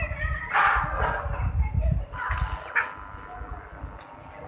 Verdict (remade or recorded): recorded